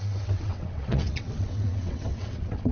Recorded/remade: remade